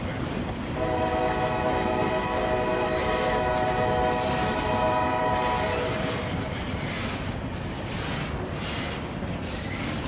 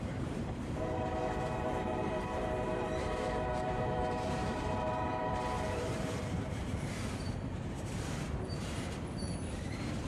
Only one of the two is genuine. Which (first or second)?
first